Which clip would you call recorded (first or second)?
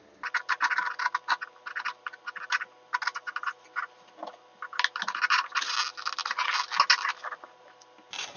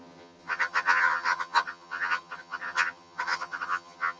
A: first